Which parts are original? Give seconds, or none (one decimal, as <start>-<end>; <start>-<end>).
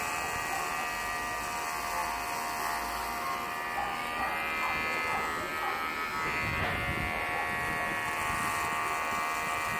0.0-9.8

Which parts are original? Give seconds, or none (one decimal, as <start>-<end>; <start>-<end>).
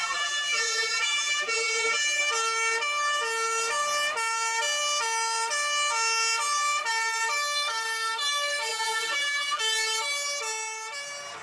2.2-8.7; 9.6-11.4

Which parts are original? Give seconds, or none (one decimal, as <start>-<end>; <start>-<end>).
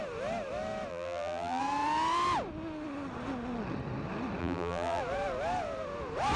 0.0-0.9; 1.6-4.4; 5.0-6.4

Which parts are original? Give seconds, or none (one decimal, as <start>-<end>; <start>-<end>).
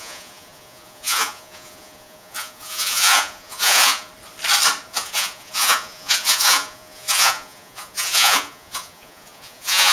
4.1-4.9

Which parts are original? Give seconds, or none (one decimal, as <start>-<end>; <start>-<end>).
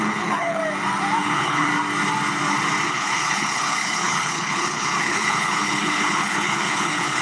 0.6-1.2; 1.7-2.9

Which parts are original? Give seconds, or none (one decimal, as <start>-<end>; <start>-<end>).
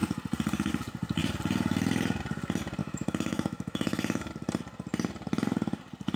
0.0-2.8; 4.3-6.2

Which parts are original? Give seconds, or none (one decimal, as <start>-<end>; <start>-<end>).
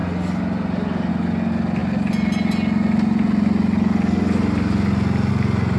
0.0-5.8